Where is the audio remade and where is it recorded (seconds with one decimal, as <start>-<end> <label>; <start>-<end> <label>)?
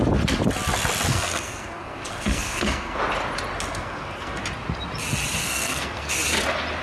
0.0-1.1 recorded; 1.1-3.0 remade; 3.0-3.7 recorded; 3.7-4.4 remade; 4.4-5.4 recorded; 5.4-6.1 remade; 6.1-6.8 recorded